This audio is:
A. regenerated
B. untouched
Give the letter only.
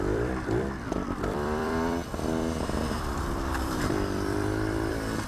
A